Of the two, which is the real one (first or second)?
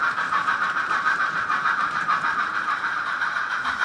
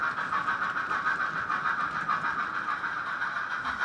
second